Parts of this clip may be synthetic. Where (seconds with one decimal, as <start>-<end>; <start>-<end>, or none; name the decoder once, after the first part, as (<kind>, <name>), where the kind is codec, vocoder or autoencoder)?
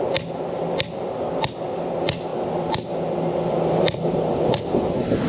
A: none